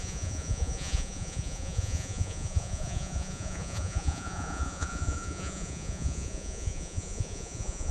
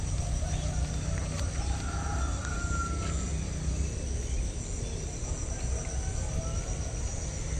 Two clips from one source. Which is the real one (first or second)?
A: second